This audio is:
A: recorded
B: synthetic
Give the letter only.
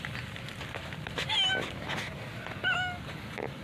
A